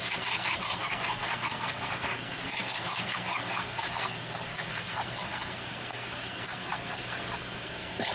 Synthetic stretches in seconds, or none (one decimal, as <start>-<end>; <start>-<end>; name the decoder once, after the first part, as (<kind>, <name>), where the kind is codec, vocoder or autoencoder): 0.0-8.1 (codec, SNAC)